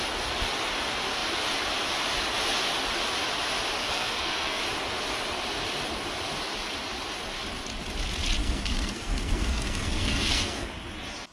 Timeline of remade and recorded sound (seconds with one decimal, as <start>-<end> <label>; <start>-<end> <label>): 0.0-3.8 recorded; 3.8-4.6 remade; 4.6-8.4 recorded; 8.4-10.7 remade; 10.7-11.3 recorded